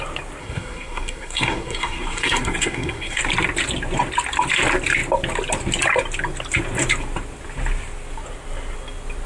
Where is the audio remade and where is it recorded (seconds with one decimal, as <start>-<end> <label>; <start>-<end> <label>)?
0.0-0.4 recorded; 0.4-3.2 remade; 3.2-9.3 recorded